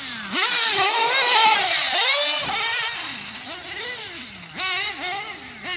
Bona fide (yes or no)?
yes